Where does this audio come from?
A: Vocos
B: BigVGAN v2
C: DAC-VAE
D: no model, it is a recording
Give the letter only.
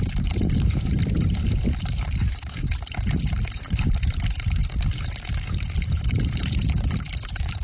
B